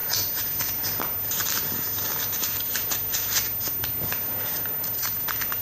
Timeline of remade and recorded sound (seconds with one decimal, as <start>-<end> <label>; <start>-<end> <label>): 0.0-5.6 recorded